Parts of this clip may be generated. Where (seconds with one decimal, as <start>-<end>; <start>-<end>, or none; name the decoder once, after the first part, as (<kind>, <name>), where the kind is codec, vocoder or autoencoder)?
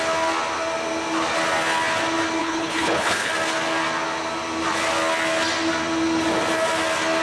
2.4-3.3 (codec, HILCodec)